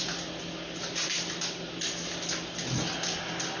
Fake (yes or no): no